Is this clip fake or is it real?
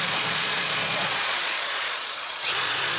fake